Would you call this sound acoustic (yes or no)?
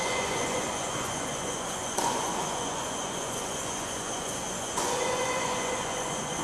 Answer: no